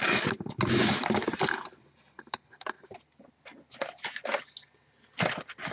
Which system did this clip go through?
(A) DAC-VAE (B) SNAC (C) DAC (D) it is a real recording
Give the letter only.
D